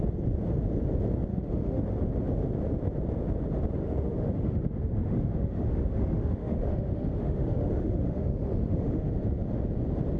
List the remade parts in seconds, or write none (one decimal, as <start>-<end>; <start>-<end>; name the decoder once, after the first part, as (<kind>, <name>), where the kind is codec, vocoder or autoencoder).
1.3-1.8 (autoencoder, DAC-VAE); 3.8-9.1